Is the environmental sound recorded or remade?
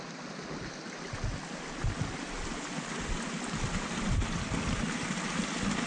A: recorded